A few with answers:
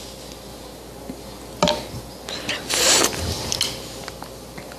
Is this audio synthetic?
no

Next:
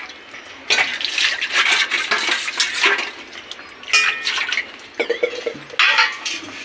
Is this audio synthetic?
no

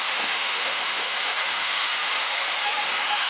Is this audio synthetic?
yes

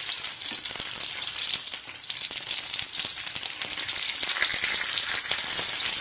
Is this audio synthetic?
no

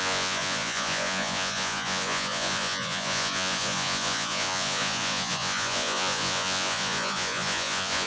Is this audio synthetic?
yes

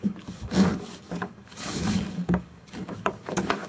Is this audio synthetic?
yes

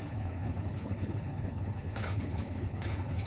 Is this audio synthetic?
yes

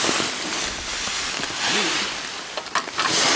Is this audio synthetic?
no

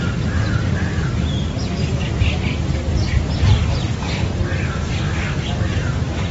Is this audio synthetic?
no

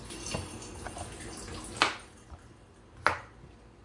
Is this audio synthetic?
no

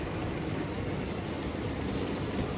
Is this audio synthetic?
no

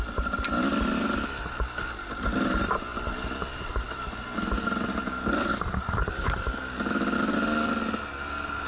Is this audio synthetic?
no